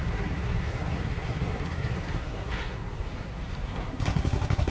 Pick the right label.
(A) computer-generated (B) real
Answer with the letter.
A